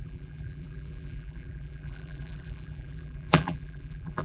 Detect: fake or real fake